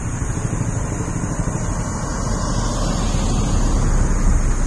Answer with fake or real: real